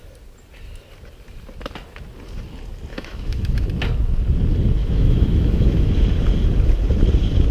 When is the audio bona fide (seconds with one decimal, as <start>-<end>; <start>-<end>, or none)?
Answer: 0.0-2.9; 3.7-4.8; 5.9-7.5